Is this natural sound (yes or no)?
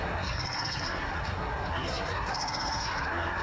no